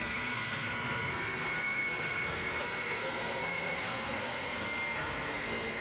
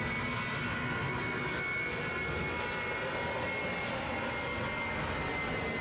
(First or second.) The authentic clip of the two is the second